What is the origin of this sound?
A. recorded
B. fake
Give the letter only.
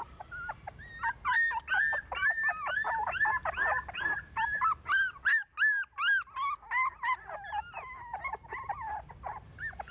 A